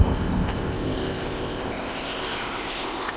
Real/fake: fake